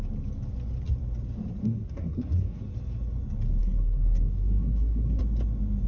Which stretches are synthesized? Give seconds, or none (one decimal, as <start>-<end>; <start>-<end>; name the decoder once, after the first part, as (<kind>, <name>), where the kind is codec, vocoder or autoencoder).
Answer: 1.6-2.6 (codec, SNAC); 3.6-5.2